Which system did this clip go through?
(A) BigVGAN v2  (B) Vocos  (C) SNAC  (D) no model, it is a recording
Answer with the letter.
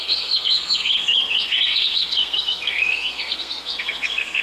C